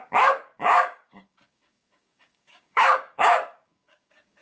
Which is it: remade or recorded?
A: remade